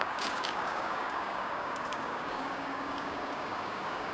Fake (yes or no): yes